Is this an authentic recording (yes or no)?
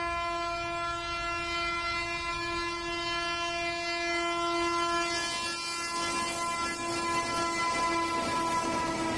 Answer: yes